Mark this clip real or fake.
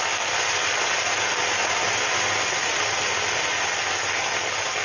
real